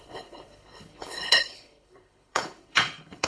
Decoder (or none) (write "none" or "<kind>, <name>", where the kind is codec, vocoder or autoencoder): codec, HILCodec